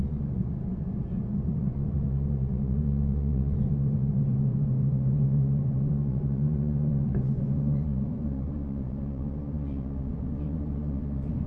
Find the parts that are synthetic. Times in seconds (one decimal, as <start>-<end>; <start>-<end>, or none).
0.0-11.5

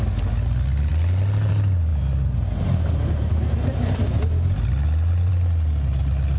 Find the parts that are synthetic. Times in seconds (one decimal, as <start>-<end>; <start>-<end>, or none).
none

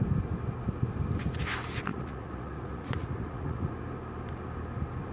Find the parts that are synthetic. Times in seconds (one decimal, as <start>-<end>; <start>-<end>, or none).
1.9-3.7

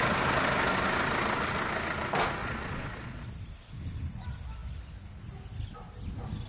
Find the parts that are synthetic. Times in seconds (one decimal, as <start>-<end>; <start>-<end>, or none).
2.4-3.3